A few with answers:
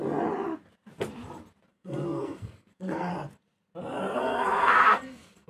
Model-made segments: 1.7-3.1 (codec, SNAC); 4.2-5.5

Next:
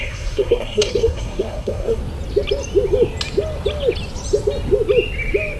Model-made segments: 0.0-2.0 (codec, SNAC)